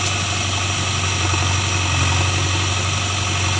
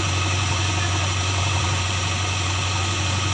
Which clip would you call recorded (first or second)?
first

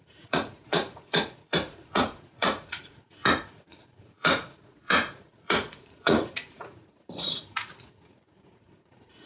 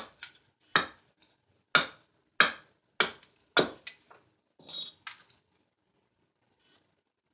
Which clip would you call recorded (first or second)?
second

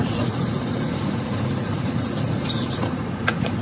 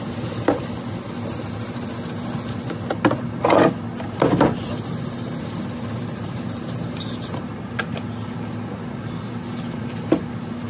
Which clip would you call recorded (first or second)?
second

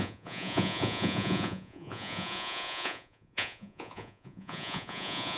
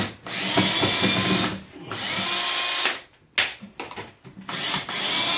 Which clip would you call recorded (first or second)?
second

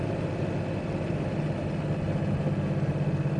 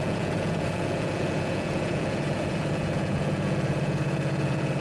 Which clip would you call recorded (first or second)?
first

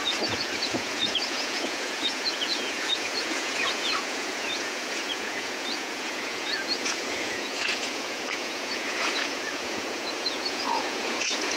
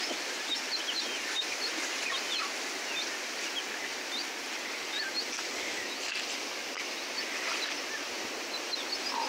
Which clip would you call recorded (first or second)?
second